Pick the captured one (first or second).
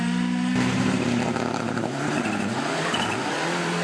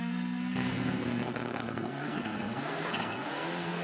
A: first